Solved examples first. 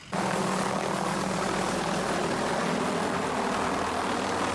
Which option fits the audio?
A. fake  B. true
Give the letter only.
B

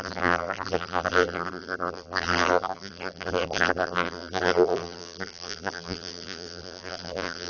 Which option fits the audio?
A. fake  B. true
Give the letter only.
A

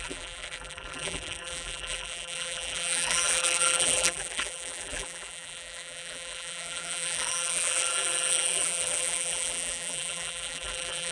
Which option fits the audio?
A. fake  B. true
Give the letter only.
A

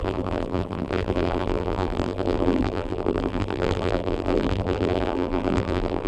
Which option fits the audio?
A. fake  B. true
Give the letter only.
A